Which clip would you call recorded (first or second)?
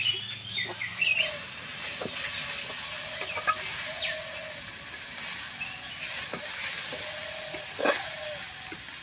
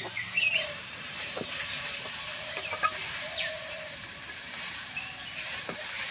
first